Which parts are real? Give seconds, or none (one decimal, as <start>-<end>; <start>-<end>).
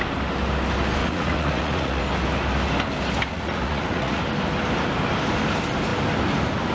0.0-1.0; 2.0-3.3; 4.2-6.7